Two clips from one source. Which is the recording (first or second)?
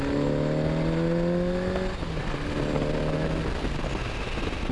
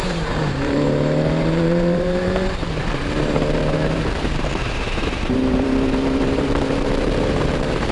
first